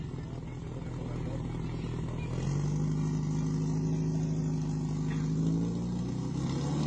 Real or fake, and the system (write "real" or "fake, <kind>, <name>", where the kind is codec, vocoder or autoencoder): real